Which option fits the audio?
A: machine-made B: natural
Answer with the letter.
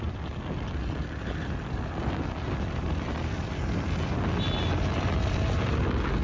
B